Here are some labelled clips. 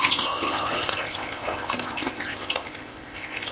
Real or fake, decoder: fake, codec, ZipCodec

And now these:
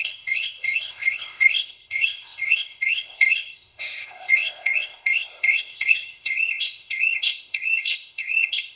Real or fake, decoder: fake, codec, ZipCodec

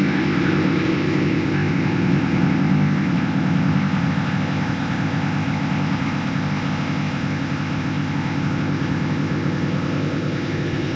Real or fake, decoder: fake, codec, ZipCodec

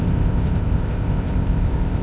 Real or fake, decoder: fake, codec, ZipCodec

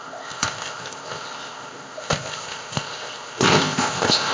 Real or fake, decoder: fake, codec, ZipCodec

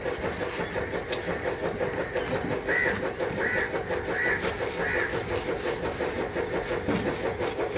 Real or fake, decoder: real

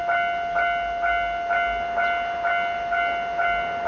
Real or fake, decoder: real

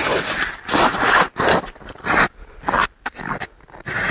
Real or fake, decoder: real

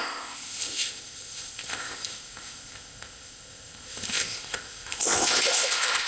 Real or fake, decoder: fake, codec, ZipCodec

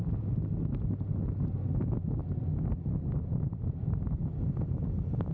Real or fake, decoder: real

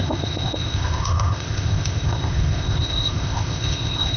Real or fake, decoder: fake, codec, ZipCodec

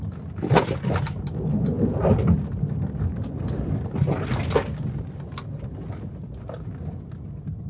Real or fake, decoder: real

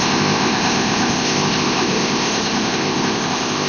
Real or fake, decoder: fake, codec, ZipCodec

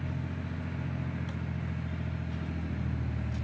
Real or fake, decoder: real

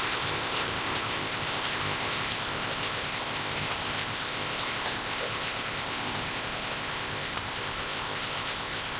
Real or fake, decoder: fake, codec, ZipCodec